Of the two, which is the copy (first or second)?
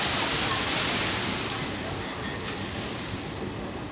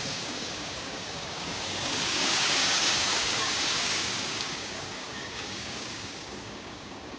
second